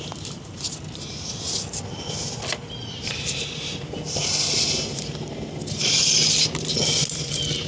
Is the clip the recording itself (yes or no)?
yes